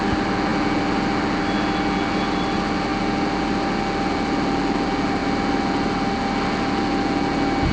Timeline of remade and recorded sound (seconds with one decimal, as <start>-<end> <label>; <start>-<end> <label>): 0.0-7.7 recorded